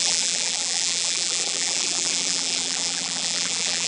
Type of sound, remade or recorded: remade